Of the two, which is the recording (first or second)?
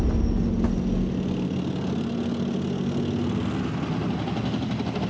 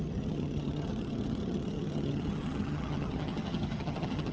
first